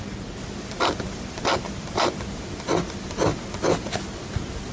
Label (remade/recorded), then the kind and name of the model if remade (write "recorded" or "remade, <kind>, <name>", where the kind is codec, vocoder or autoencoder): recorded